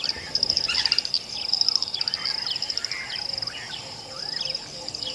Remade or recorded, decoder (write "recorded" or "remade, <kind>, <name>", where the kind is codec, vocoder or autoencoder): remade, vocoder, BigVGAN v2